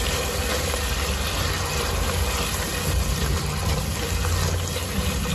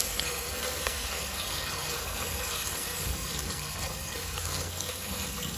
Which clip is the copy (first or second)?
second